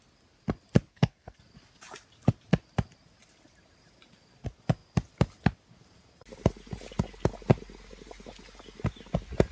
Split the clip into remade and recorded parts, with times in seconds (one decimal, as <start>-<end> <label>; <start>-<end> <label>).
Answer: 0.0-0.9 recorded; 0.9-1.4 remade; 1.4-9.5 recorded